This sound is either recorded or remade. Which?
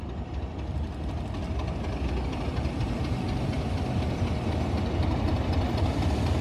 recorded